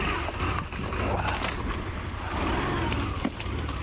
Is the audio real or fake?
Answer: real